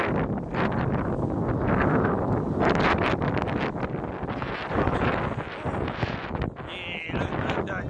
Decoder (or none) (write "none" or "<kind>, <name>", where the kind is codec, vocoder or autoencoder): none